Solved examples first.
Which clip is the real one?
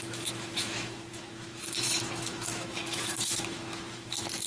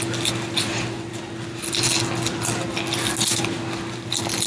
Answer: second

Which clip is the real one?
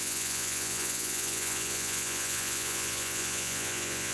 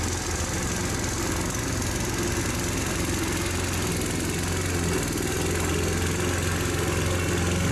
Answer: second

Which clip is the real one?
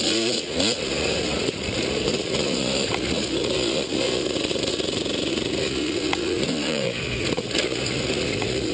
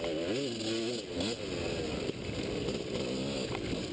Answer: second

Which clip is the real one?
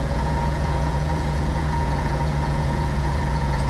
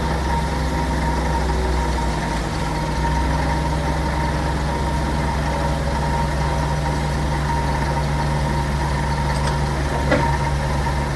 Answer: second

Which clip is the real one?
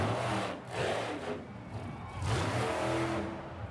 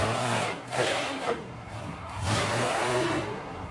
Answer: first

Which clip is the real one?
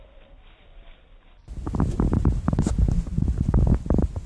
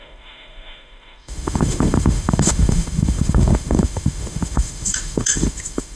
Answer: first